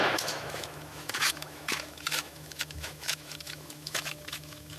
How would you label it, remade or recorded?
remade